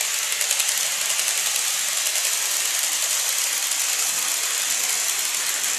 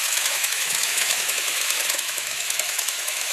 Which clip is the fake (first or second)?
second